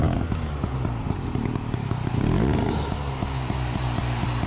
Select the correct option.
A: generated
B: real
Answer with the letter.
B